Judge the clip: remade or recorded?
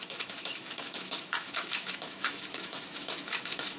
remade